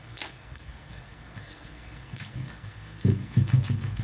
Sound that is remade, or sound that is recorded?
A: remade